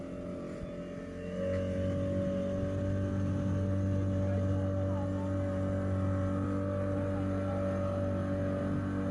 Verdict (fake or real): real